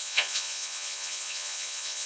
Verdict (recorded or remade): remade